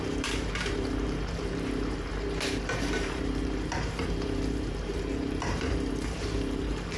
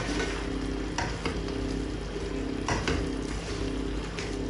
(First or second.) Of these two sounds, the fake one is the first